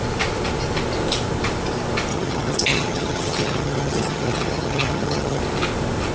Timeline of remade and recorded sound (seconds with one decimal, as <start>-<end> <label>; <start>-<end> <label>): 0.0-2.1 recorded; 2.1-5.4 remade; 5.4-6.1 recorded